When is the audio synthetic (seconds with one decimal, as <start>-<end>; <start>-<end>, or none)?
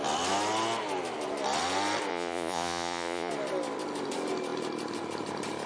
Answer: 2.1-3.3